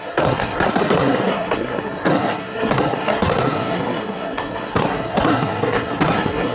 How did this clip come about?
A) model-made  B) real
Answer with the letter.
A